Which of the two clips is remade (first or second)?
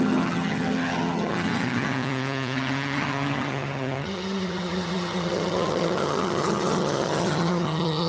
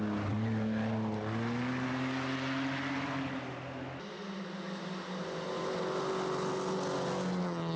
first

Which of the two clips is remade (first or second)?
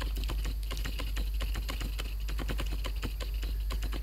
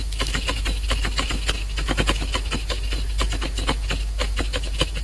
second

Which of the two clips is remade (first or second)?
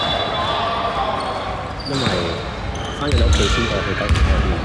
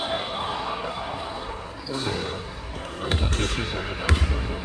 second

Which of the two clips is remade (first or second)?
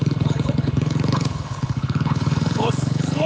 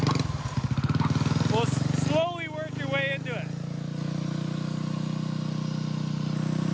first